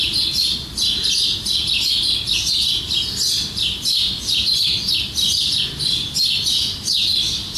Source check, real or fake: real